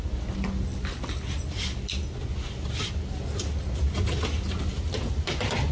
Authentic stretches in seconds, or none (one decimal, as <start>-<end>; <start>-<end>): 0.0-5.7